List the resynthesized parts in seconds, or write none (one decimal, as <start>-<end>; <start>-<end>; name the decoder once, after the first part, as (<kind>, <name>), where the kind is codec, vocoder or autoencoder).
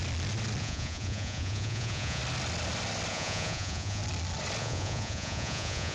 0.6-2.2 (vocoder, Vocos); 3.1-4.0; 4.6-5.9